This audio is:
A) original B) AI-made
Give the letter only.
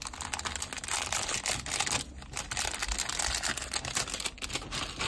A